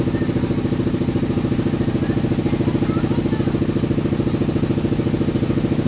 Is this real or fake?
real